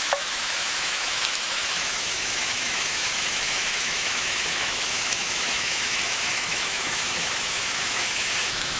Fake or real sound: fake